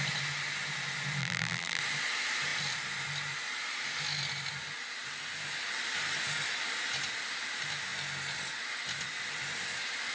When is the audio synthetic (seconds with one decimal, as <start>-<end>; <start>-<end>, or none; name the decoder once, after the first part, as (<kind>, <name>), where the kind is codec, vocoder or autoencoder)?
1.2-1.8 (vocoder, BigVGAN v2)